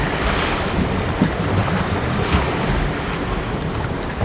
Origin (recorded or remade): recorded